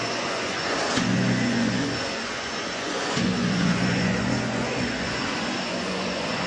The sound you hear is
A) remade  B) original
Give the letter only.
A